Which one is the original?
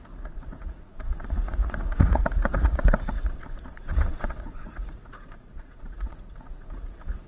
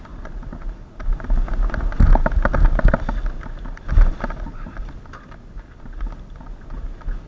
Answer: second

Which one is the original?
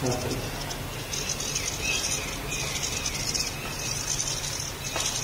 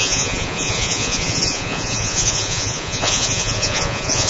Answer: first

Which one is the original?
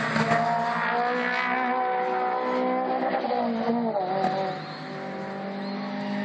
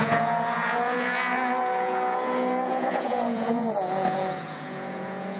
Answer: first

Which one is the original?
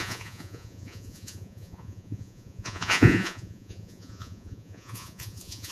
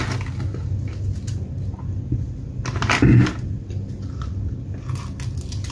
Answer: second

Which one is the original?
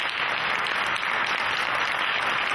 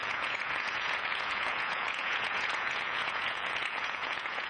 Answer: first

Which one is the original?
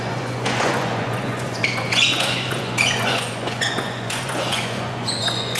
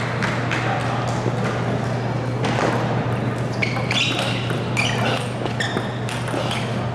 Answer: second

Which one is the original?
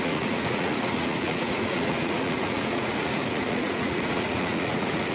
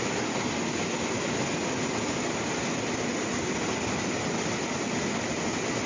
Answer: second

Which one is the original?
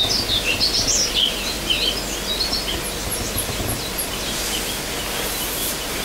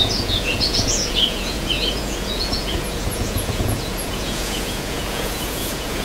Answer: first